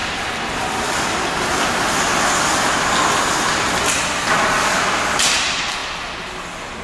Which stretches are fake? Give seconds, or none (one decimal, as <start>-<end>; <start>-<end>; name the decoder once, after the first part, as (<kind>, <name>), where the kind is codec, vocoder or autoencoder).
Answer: none